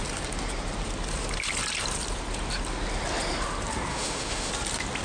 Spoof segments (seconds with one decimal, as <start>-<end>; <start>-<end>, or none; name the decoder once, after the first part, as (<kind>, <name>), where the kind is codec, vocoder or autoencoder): 3.9-4.5 (autoencoder, DAC-VAE)